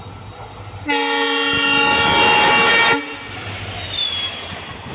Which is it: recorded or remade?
recorded